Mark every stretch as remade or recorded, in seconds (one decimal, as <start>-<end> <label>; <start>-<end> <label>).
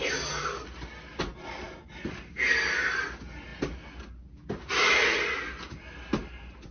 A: 0.0-6.7 recorded